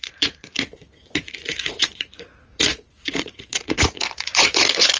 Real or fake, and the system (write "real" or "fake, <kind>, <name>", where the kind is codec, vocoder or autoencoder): fake, vocoder, Vocos